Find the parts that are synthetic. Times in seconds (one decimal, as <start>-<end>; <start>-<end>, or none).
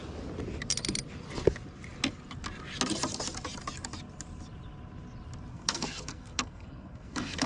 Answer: 5.5-7.5